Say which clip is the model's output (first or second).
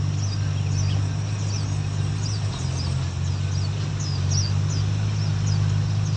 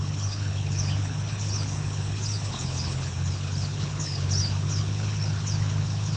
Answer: second